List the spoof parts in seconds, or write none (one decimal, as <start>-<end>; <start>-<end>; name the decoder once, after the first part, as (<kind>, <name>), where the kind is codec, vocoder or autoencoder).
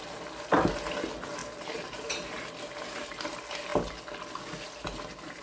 none